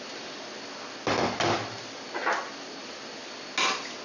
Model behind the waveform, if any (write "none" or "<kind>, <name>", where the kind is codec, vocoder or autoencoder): none